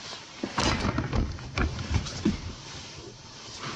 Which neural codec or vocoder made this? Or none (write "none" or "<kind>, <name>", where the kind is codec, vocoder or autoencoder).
none